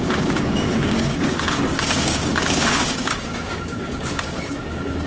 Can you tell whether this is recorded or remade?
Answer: remade